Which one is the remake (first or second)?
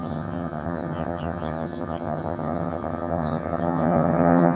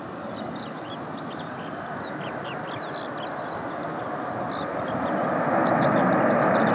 first